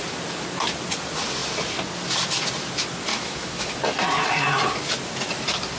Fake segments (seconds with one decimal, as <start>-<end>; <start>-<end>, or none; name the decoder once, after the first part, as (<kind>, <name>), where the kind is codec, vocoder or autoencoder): 3.1-3.7 (autoencoder, DAC-VAE)